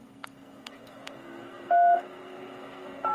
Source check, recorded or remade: remade